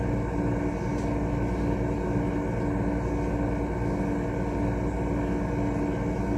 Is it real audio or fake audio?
real